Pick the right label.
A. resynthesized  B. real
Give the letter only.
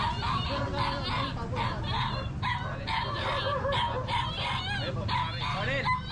B